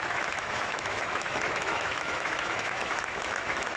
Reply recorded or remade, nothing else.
remade